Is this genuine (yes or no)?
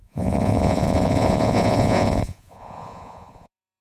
no